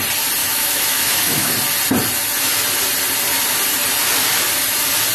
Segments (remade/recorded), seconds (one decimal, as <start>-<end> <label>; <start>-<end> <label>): 0.0-0.4 recorded; 0.4-1.5 remade; 1.5-5.1 recorded